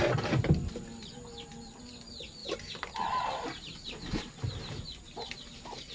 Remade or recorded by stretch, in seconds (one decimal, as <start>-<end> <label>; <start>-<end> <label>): 0.0-5.9 recorded